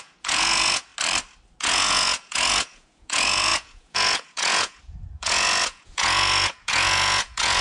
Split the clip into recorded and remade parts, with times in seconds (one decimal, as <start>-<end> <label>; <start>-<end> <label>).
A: 0.0-0.9 remade; 0.9-1.6 recorded; 1.6-7.6 remade